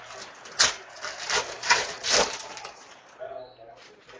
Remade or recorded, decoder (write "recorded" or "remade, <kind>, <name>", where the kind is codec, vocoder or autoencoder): recorded